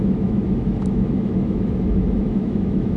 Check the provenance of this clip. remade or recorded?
remade